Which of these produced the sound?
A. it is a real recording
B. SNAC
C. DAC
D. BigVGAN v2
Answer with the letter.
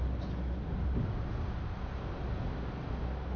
A